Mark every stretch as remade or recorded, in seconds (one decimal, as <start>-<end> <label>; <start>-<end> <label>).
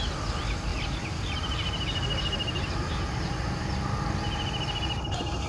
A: 0.0-5.5 recorded